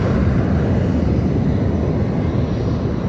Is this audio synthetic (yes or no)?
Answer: no